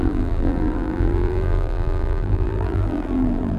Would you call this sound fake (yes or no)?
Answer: yes